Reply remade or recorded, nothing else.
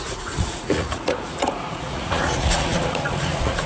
remade